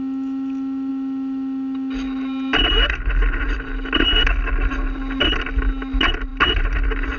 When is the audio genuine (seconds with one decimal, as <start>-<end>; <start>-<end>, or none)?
0.0-7.2